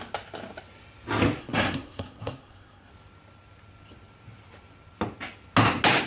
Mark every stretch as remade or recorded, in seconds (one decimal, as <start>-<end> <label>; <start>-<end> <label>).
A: 0.0-1.4 recorded; 1.4-2.9 remade; 2.9-6.1 recorded